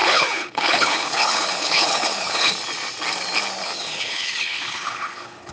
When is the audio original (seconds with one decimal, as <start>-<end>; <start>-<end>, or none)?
2.5-3.6